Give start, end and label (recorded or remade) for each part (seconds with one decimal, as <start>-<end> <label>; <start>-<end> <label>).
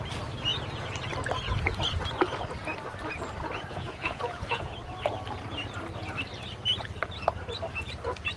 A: 0.0-3.7 recorded; 3.7-4.7 remade; 4.7-8.4 recorded